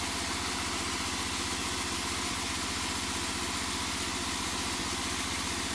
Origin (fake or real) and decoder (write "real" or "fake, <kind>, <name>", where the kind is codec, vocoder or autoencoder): real